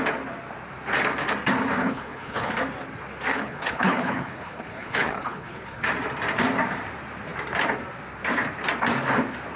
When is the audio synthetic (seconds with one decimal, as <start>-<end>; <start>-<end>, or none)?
1.8-2.5; 3.3-5.8